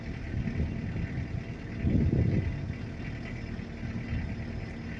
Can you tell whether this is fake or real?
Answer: real